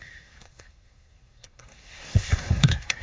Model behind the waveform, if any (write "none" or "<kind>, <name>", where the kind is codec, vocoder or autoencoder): codec, SNAC